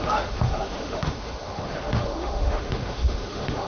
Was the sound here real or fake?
fake